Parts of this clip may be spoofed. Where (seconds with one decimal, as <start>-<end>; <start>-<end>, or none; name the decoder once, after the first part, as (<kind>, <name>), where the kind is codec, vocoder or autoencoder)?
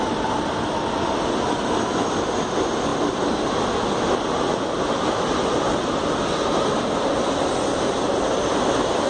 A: none